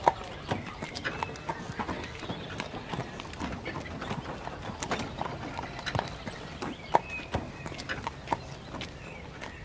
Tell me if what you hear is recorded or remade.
recorded